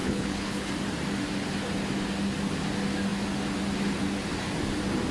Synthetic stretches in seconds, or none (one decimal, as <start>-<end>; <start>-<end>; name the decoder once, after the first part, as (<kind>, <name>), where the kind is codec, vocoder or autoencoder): 0.0-0.7 (codec, HILCodec)